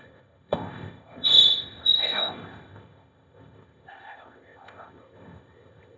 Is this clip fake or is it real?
fake